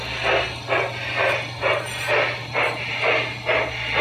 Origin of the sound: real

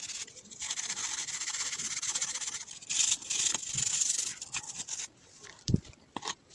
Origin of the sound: real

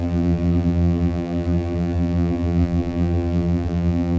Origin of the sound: fake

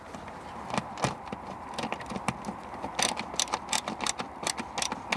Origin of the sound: real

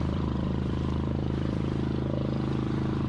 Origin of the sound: fake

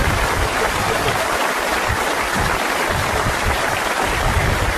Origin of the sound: fake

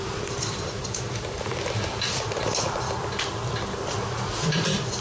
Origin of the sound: fake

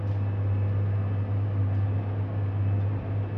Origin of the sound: real